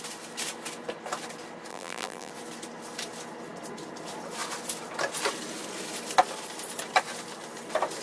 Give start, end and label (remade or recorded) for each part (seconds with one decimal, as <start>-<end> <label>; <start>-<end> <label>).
0.0-1.7 recorded; 1.7-2.3 remade; 2.3-8.0 recorded